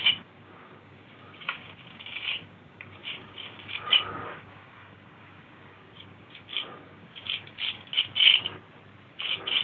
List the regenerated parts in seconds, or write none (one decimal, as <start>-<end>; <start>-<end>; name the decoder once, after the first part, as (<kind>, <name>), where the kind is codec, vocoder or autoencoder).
0.0-7.9 (codec, DAC); 9.1-9.6